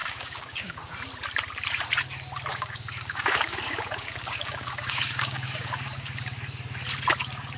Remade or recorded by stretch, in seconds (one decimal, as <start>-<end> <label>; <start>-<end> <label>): 0.0-0.9 remade; 0.9-2.5 recorded; 2.5-6.4 remade; 6.4-7.6 recorded